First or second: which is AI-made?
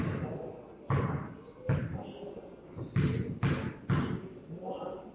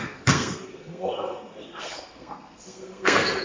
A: second